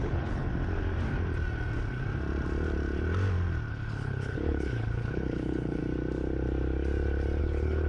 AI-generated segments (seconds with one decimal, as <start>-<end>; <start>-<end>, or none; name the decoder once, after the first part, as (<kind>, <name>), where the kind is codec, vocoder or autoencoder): 0.0-0.5 (codec, HILCodec); 3.7-5.8; 7.4-7.9

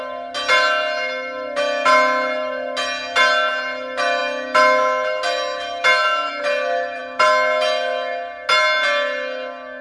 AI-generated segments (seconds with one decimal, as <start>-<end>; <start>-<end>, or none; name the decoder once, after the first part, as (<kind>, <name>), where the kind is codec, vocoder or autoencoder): none

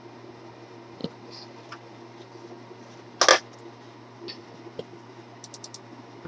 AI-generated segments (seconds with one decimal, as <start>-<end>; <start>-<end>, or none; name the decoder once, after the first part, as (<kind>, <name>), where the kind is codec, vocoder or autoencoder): none

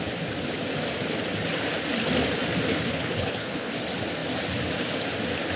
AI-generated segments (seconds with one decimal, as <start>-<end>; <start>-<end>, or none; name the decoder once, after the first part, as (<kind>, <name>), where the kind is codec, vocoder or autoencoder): 2.7-3.7 (codec, HILCodec)

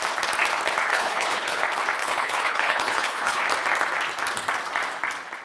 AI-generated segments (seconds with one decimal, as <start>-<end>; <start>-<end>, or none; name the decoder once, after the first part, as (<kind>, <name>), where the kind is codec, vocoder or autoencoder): 0.9-1.6 (codec, HILCodec); 2.0-3.4

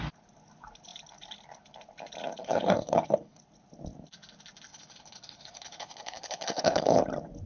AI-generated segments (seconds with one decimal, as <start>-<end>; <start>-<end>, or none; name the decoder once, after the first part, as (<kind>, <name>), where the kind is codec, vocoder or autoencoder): 2.4-3.4 (codec, HILCodec); 4.7-7.0

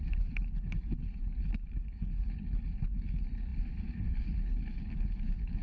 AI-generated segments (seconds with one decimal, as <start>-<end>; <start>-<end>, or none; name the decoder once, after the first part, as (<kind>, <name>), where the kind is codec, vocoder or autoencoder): 0.0-5.6 (codec, HILCodec)

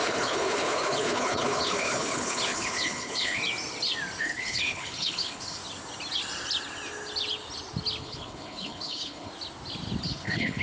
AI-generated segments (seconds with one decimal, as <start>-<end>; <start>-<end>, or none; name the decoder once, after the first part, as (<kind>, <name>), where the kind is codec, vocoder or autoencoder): 0.0-3.4 (codec, HILCodec); 4.2-5.6; 8.0-9.3; 10.0-10.6